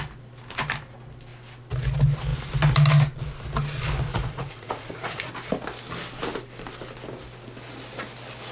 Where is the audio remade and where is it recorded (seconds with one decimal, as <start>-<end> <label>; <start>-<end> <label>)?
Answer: 0.0-4.1 recorded; 4.1-5.3 remade; 5.3-8.5 recorded